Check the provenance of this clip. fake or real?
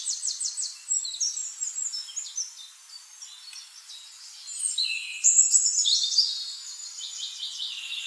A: real